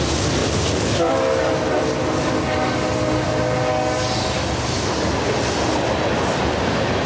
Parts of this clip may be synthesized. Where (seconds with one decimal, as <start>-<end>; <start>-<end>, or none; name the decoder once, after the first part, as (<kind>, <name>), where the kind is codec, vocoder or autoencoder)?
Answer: none